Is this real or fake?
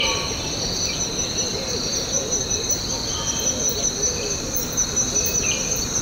real